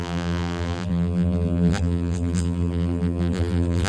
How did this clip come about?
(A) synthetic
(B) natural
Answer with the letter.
A